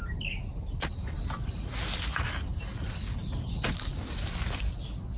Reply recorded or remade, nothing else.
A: recorded